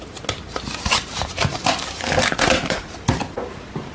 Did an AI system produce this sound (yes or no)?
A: no